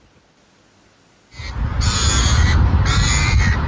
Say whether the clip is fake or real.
real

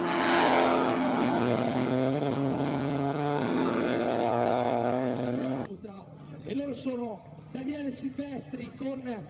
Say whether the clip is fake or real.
fake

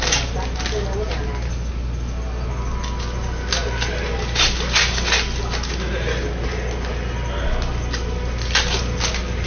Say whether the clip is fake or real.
real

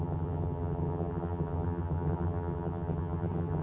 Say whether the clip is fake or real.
fake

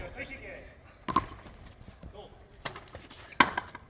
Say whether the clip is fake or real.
real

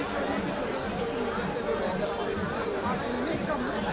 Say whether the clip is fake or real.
real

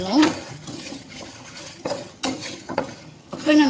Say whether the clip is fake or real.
fake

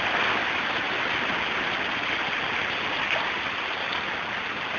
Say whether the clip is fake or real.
real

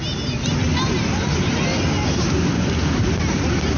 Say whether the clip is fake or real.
real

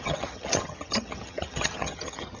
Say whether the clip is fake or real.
fake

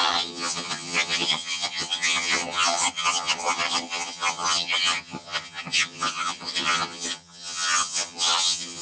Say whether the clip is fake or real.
fake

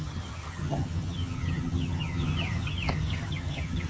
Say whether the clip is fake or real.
fake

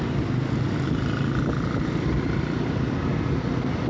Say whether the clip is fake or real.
real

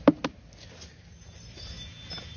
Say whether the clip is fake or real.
real